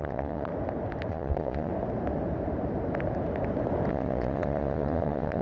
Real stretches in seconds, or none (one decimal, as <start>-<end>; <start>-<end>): 0.5-1.1; 1.7-3.9